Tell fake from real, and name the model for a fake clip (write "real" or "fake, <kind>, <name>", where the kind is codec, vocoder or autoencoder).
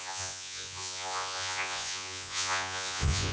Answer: fake, vocoder, Vocos